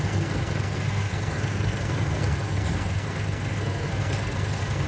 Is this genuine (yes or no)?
no